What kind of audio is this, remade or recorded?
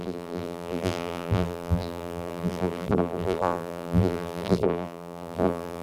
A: remade